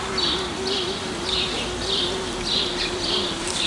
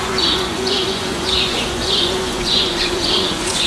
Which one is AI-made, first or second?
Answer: second